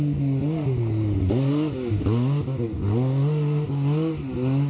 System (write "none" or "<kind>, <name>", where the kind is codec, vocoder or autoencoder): none